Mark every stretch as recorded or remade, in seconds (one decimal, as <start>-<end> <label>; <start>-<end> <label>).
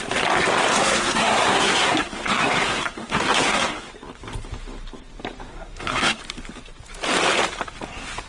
0.0-0.8 recorded; 0.8-3.9 remade; 3.9-5.5 recorded; 5.5-6.2 remade; 6.2-8.3 recorded